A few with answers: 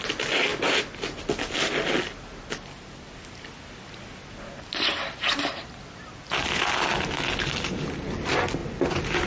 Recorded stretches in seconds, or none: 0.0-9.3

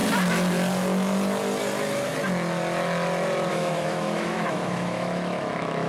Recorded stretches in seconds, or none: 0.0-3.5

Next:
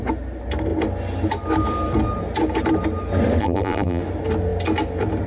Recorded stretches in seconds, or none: 0.0-3.4; 4.0-5.3

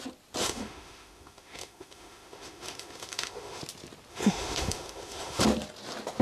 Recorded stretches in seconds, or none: 0.0-0.4; 3.6-4.1; 5.4-6.2

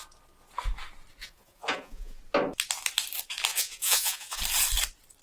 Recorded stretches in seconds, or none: 0.0-1.2; 2.2-3.5; 4.4-5.2